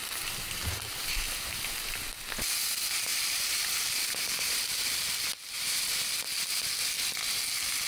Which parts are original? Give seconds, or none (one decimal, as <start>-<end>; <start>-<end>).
1.9-3.1; 5.0-5.4; 6.0-7.9